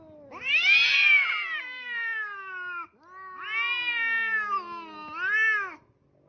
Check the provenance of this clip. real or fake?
real